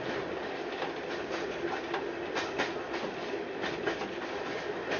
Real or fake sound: real